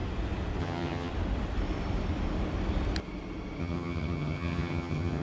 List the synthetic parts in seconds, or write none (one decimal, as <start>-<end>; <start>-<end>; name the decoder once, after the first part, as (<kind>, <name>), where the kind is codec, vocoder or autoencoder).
0.6-1.1 (vocoder, HiFi-GAN); 3.6-5.2

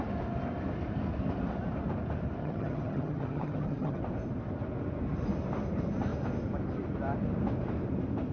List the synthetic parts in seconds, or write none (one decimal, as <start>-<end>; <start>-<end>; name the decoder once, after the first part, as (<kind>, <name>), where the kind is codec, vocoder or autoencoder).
2.4-4.0 (vocoder, HiFi-GAN)

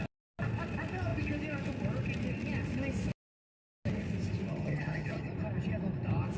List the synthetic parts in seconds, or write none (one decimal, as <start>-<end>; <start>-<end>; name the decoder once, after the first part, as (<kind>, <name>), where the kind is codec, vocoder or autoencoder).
4.5-5.3 (vocoder, HiFi-GAN)

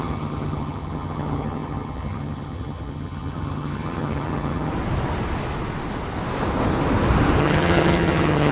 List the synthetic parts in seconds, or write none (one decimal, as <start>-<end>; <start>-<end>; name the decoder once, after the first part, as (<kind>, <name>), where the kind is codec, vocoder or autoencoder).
0.0-4.7 (vocoder, HiFi-GAN); 7.4-8.5

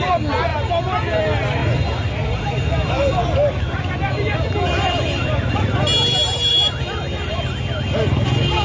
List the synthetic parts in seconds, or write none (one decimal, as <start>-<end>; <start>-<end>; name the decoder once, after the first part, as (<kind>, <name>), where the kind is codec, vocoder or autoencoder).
none

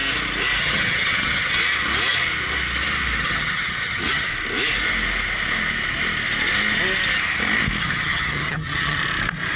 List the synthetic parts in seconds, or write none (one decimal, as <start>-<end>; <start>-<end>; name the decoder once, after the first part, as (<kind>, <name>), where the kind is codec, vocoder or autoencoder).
0.6-1.6 (vocoder, HiFi-GAN); 3.2-4.3; 7.8-9.0

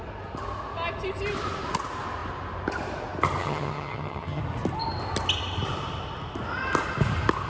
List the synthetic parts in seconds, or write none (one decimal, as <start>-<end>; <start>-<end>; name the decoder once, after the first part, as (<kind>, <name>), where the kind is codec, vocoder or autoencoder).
3.4-4.4 (vocoder, HiFi-GAN)